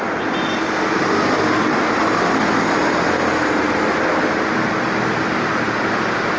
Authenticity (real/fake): real